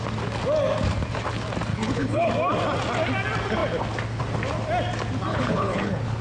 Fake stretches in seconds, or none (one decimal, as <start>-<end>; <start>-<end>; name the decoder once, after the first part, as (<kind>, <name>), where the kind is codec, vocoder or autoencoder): 1.7-2.3 (codec, HILCodec); 5.3-6.2